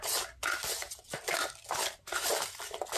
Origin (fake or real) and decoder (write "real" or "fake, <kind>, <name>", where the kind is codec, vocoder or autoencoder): real